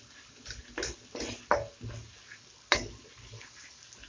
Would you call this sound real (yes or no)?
yes